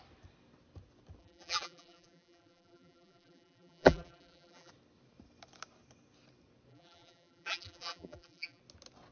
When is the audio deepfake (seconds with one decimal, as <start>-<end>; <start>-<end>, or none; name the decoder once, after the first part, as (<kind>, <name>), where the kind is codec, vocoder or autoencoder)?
1.2-4.7 (vocoder, BigVGAN v2); 6.7-8.6